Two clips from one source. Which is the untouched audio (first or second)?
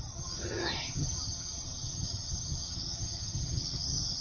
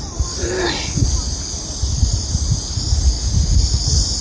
second